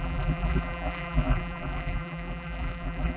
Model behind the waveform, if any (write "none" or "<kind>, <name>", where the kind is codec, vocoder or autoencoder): vocoder, BigVGAN v2